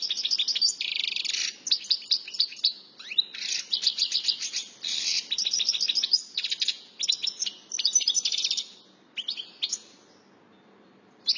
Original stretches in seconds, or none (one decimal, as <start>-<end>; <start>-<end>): 0.0-11.4